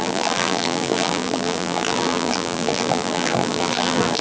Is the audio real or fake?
fake